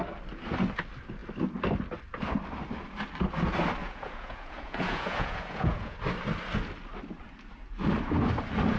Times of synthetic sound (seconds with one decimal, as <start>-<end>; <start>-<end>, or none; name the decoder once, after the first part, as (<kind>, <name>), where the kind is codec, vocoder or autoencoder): 3.8-6.0 (vocoder, Vocos)